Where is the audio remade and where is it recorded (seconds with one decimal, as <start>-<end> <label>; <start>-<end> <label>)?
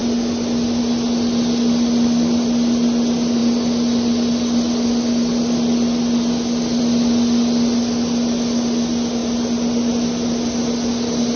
0.0-11.4 recorded